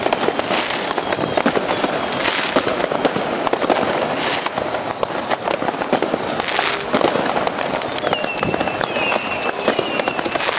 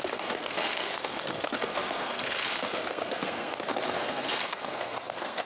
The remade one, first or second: second